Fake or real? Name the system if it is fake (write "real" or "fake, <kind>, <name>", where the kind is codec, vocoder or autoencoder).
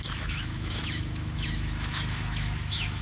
fake, autoencoder, DAC-VAE